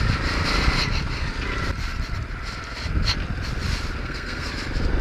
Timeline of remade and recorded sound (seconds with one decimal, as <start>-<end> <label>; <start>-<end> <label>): 0.0-4.0 recorded; 4.0-4.5 remade; 4.5-5.0 recorded